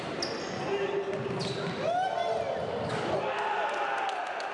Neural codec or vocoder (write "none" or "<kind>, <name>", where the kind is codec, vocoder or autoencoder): none